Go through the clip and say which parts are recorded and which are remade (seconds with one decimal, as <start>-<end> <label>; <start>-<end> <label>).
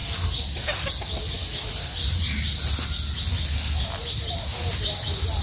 0.0-5.4 recorded